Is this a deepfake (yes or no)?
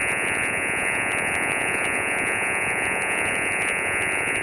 yes